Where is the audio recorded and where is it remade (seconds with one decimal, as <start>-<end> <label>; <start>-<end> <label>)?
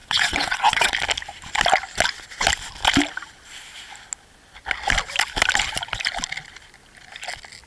0.0-0.9 remade; 0.9-7.7 recorded